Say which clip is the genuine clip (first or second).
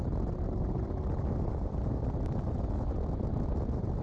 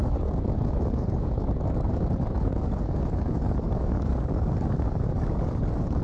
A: first